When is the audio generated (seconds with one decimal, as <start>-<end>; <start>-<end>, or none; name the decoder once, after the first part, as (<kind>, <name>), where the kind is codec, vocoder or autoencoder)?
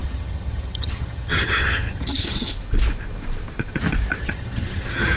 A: 0.0-2.5 (vocoder, HiFi-GAN); 4.2-5.2